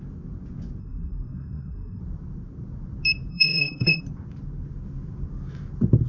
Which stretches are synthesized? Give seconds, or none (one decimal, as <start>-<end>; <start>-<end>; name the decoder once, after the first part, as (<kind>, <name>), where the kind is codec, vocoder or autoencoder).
0.8-2.0 (codec, SNAC); 3.3-4.0